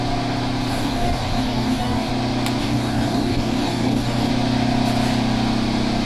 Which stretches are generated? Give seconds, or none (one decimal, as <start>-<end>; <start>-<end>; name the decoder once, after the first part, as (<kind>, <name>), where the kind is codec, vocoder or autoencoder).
0.7-2.1 (codec, DAC); 2.6-4.3